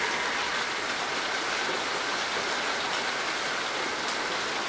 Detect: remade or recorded recorded